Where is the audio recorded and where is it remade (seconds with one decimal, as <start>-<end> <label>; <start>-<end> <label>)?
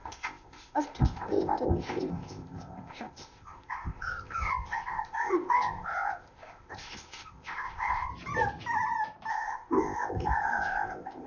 0.0-8.1 remade; 8.1-9.3 recorded; 9.3-11.3 remade